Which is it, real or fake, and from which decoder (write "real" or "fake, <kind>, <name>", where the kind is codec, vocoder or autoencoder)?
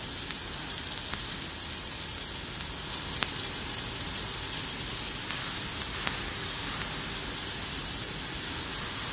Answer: real